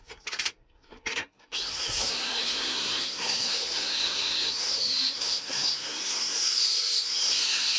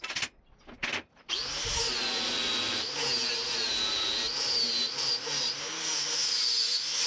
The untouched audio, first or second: second